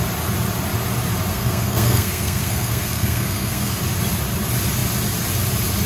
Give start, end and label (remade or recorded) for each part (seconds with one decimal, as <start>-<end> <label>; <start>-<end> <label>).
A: 0.0-1.3 recorded; 1.3-3.8 remade; 3.8-5.9 recorded